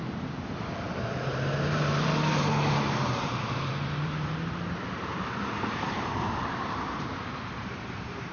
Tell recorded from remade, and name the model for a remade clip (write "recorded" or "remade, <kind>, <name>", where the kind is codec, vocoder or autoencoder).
remade, vocoder, BigVGAN v2